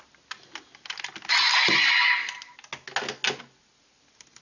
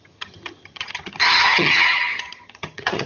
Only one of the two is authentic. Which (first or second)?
first